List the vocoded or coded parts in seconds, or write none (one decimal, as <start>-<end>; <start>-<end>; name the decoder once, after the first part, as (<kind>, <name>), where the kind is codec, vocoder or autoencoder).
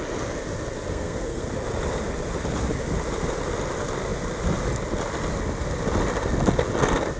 0.9-1.5 (codec, SNAC)